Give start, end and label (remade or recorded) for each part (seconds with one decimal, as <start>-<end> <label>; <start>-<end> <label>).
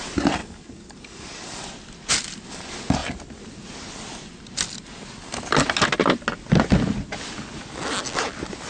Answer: 0.0-0.4 recorded; 0.4-1.6 remade; 1.6-8.7 recorded